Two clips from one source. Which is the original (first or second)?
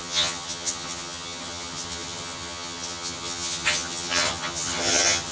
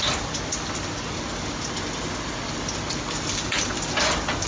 second